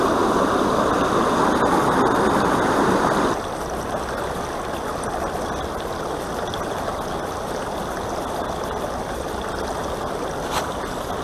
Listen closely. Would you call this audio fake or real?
real